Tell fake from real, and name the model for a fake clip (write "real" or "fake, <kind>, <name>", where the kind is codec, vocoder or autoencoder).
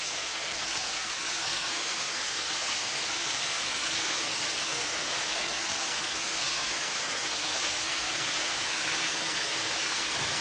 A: fake, codec, SNAC